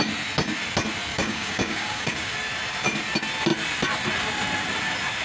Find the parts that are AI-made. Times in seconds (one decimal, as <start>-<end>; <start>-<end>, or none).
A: 1.1-2.3